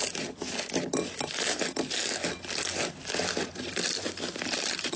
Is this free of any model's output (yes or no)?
yes